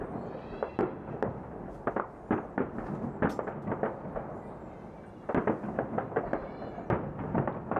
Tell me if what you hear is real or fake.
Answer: real